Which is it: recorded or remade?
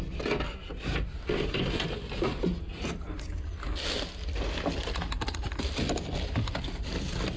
recorded